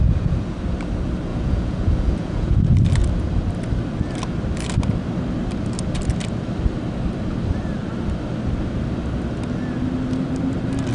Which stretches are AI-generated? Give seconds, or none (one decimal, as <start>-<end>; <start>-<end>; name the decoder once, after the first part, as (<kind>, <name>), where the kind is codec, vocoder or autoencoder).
1.3-2.5 (vocoder, Vocos)